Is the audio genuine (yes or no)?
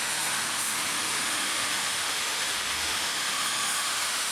no